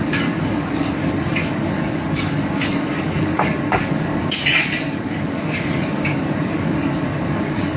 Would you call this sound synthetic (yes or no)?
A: yes